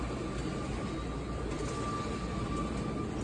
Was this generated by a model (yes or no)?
no